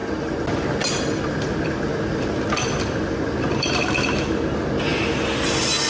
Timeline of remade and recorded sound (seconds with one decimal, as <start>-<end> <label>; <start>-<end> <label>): 0.0-2.3 remade; 2.3-5.9 recorded